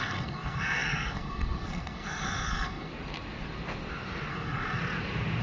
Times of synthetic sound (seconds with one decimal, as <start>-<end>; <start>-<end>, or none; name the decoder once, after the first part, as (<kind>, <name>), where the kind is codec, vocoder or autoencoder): 0.0-2.9 (codec, SNAC); 4.3-4.8